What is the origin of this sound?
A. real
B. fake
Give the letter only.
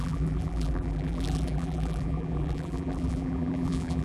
B